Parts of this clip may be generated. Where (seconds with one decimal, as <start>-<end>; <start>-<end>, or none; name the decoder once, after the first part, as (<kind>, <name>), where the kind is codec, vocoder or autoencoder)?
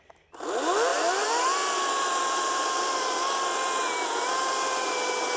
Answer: 0.9-3.0 (vocoder, BigVGAN v2)